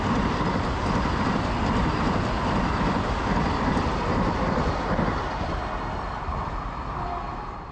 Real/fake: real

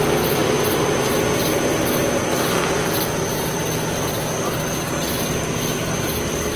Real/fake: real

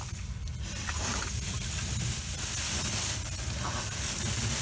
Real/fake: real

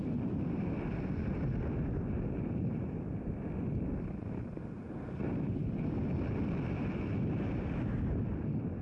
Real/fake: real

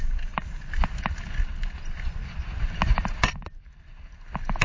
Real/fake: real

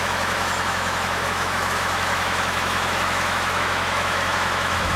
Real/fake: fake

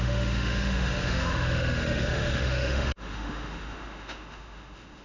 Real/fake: fake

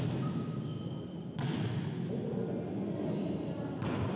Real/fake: real